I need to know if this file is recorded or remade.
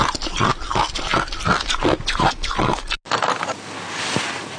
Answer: recorded